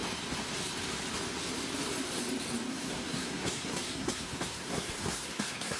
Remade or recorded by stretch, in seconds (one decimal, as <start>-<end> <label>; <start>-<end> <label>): 0.0-2.7 recorded; 2.7-5.8 remade